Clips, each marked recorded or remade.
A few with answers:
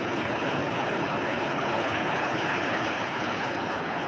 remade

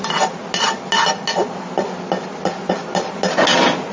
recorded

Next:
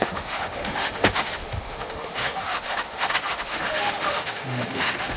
remade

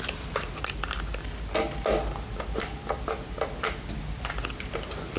recorded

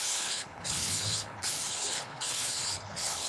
remade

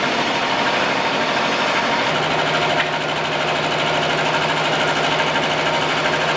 recorded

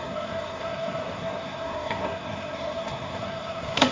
remade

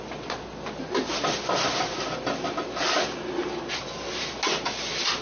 recorded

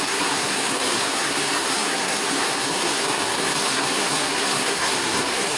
remade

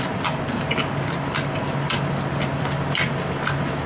recorded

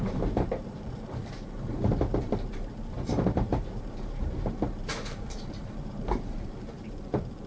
remade